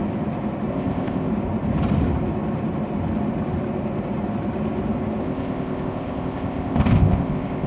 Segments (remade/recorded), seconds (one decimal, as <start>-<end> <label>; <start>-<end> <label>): 0.0-0.7 recorded; 0.7-1.3 remade; 1.3-5.2 recorded; 5.2-7.7 remade